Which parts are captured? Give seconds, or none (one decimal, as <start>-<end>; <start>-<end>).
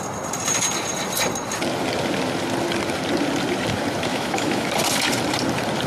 0.0-4.1; 4.7-5.9